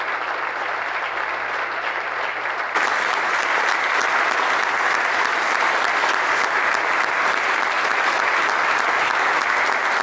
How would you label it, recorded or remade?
recorded